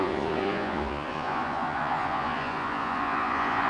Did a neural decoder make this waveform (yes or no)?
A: yes